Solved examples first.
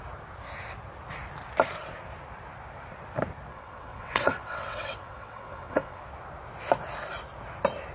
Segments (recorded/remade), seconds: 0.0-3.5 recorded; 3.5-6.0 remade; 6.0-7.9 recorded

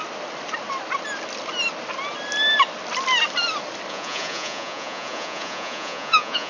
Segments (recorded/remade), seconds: 0.0-3.9 recorded; 3.9-6.5 remade

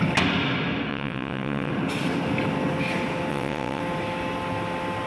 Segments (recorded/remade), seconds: 0.0-0.9 recorded; 0.9-1.7 remade; 1.7-3.3 recorded; 3.3-3.8 remade; 3.8-5.1 recorded

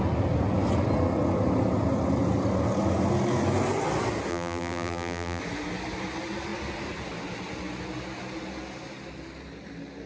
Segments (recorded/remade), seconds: 0.0-4.3 recorded; 4.3-5.4 remade; 5.4-10.1 recorded